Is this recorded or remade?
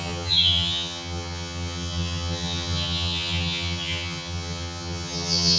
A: remade